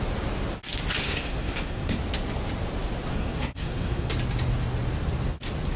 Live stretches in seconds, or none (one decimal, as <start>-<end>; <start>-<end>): 0.0-1.0; 2.0-3.1; 4.1-5.8